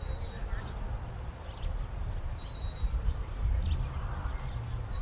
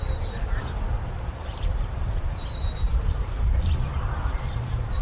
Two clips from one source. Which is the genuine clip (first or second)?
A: first